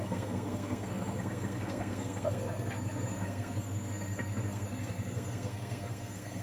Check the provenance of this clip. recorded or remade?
remade